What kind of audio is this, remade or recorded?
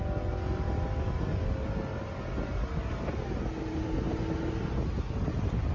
recorded